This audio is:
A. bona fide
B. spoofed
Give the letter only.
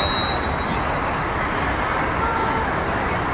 A